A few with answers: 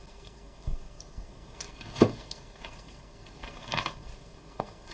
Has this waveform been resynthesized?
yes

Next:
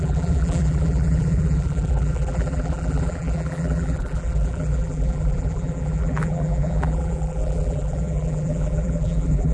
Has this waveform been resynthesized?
yes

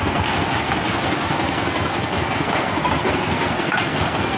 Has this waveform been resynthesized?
yes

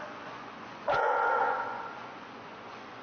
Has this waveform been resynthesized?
yes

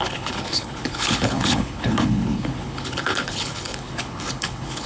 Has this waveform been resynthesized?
yes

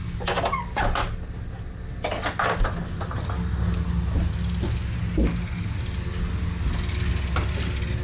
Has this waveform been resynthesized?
no